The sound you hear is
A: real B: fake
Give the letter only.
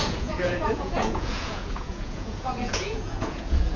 B